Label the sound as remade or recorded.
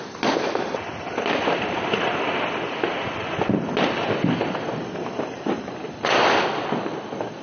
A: recorded